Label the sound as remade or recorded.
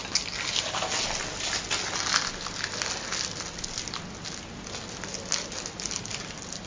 recorded